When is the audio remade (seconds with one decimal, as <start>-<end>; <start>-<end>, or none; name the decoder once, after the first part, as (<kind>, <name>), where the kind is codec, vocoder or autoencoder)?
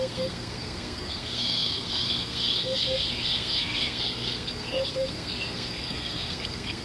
0.0-6.8 (codec, SNAC)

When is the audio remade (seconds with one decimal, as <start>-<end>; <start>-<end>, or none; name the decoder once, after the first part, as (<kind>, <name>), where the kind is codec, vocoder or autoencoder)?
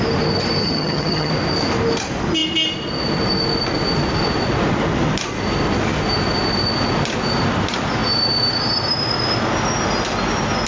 0.6-1.3 (vocoder, HiFi-GAN)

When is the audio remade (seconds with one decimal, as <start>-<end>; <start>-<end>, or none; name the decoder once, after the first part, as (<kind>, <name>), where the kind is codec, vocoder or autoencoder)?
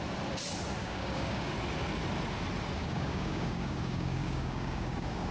0.8-1.5 (codec, DAC); 2.8-5.3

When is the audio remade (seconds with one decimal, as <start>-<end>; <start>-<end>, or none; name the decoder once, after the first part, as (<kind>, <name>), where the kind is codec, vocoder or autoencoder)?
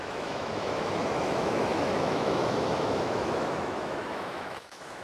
0.0-5.0 (autoencoder, DAC-VAE)